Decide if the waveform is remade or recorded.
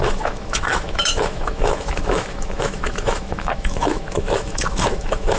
remade